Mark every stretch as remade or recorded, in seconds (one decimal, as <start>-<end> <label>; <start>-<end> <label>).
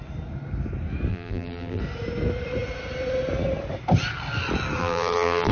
0.0-1.1 recorded; 1.1-1.8 remade; 1.8-4.8 recorded; 4.8-5.5 remade